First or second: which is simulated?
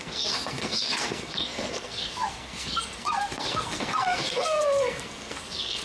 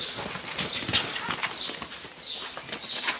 first